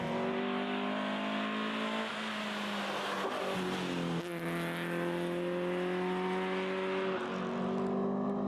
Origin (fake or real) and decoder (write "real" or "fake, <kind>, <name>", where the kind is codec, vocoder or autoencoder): real